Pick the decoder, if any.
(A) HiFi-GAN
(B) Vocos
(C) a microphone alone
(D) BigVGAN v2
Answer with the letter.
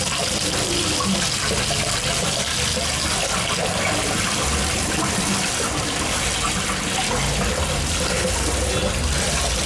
C